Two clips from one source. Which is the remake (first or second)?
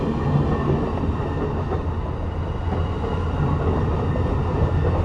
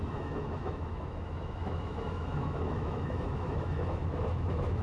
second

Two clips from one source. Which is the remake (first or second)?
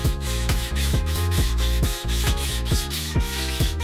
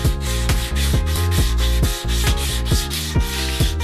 first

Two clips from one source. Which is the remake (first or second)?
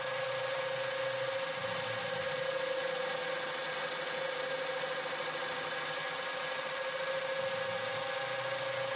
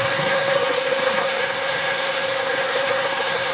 second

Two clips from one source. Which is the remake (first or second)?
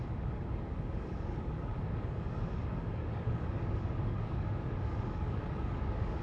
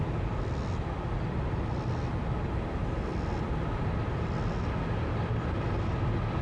first